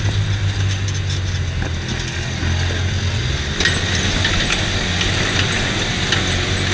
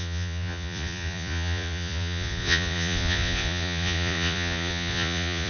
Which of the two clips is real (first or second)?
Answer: first